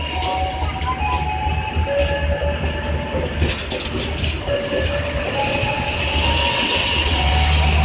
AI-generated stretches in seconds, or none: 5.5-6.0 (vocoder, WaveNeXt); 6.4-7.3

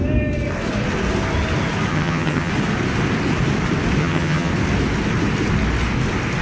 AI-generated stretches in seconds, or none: 1.9-2.5 (vocoder, HiFi-GAN); 4.0-4.5

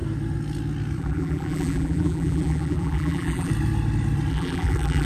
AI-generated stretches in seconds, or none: 1.0-3.5 (vocoder, BigVGAN v2); 4.3-5.0

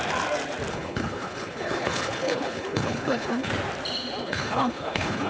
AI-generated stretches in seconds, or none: 0.7-3.5 (codec, HILCodec); 4.2-5.3

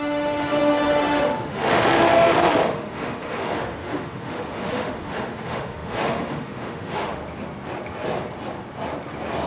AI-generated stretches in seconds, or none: 0.0-7.2 (autoencoder, DAC-VAE)

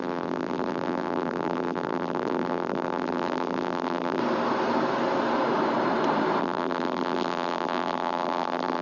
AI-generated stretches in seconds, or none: 0.0-4.2 (vocoder, BigVGAN v2); 6.4-8.8